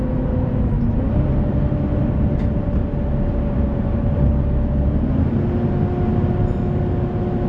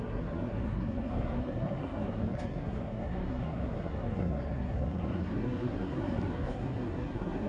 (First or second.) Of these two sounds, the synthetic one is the second